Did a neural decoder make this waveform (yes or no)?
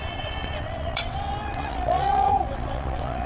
yes